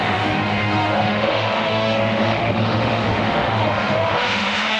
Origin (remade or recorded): remade